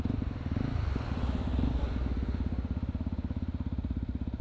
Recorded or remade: recorded